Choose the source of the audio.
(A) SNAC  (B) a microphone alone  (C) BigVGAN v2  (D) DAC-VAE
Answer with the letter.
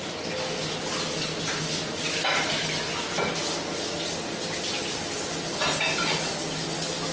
B